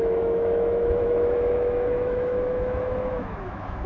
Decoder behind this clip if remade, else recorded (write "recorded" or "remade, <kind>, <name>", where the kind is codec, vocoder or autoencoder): remade, autoencoder, DAC-VAE